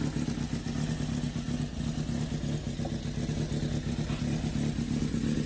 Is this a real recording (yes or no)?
yes